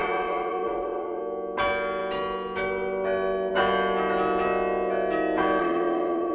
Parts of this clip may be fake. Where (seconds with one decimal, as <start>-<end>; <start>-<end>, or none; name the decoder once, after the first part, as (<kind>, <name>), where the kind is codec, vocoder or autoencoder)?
0.0-1.2 (vocoder, Vocos); 5.6-6.3